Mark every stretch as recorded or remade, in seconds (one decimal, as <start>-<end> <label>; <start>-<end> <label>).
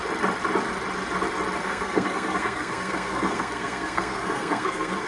0.0-1.6 recorded; 1.6-5.1 remade